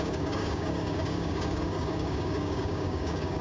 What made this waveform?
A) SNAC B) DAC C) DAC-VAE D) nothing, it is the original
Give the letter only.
B